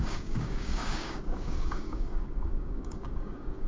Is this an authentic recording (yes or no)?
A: no